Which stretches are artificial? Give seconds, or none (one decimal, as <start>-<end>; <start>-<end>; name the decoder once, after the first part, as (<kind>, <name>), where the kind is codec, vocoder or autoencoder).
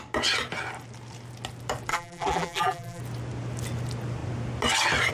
1.9-3.0 (vocoder, BigVGAN v2)